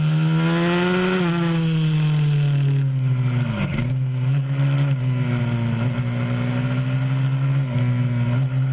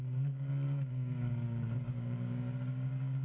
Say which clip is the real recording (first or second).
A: first